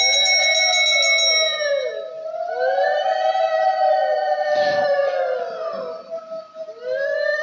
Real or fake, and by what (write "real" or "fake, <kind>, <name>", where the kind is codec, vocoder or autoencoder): real